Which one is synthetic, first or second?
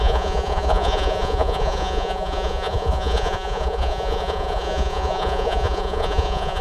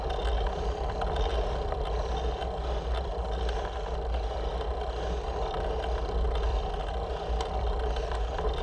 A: first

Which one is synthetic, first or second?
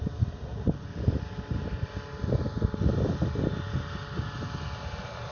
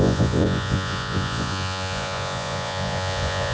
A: second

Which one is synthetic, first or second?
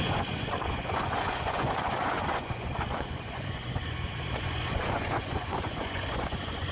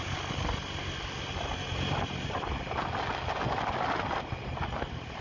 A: first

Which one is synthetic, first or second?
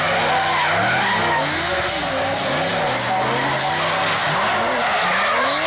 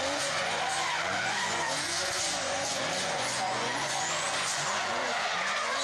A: second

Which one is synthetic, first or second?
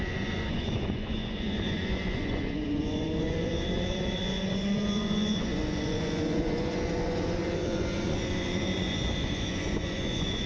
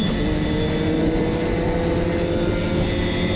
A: first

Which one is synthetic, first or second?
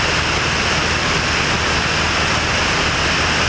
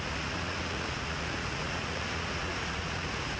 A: second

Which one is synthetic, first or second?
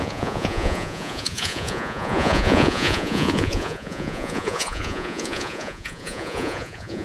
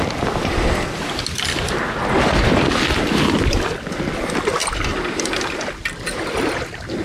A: first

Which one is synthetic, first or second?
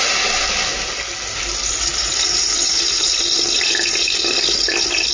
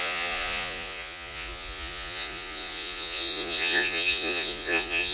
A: second